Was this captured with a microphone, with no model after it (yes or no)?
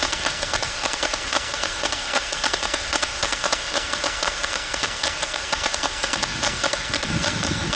no